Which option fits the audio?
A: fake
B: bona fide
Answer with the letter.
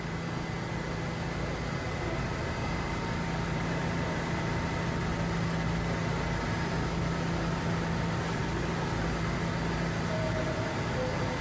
B